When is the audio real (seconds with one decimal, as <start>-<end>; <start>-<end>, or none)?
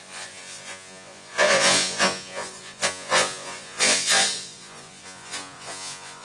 none